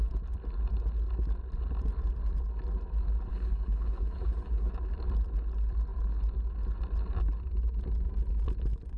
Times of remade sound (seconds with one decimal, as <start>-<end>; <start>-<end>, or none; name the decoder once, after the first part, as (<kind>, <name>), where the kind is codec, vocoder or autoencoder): 3.3-4.7 (codec, HILCodec)